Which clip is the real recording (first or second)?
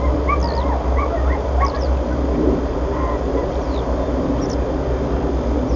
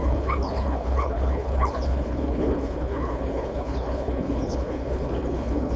first